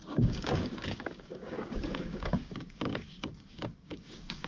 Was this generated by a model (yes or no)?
yes